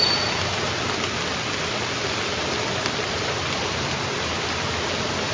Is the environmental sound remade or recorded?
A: recorded